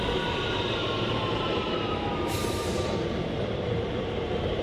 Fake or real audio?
fake